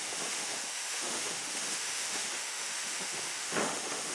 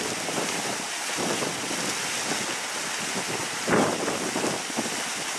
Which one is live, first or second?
second